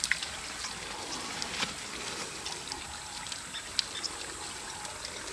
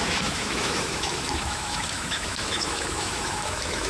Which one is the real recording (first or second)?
first